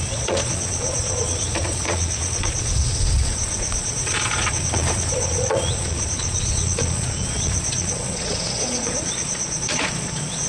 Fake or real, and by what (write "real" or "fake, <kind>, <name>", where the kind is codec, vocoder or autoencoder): fake, vocoder, Vocos